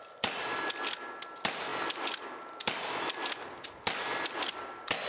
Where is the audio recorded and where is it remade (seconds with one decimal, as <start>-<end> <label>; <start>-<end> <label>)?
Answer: 0.0-5.1 recorded